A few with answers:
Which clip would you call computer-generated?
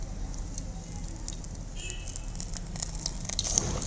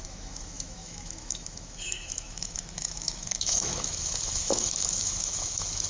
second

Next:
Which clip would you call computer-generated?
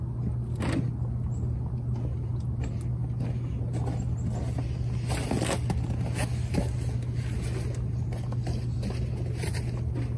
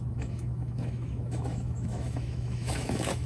second